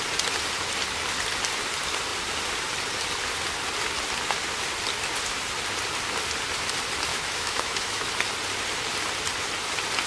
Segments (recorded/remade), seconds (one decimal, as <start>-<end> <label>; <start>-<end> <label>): 0.0-7.1 recorded; 7.1-8.1 remade; 8.1-10.1 recorded